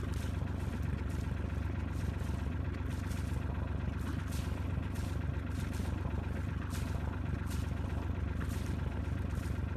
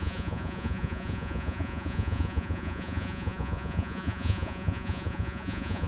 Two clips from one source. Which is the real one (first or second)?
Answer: first